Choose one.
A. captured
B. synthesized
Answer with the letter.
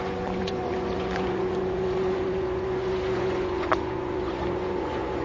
B